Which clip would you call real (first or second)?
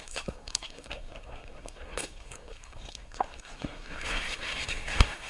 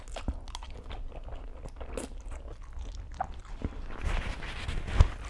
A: second